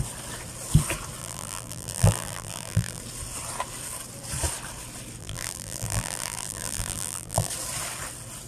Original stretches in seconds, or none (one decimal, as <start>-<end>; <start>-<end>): 0.0-1.2; 3.0-5.2; 7.5-8.5